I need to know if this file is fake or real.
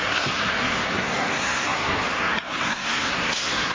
fake